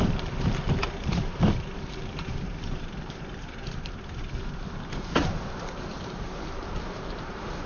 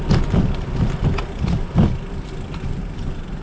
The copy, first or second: first